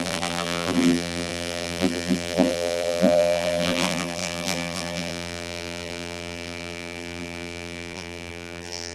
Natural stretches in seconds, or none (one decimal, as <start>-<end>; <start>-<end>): none